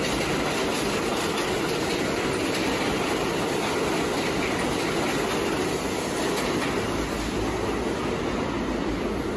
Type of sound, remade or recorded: recorded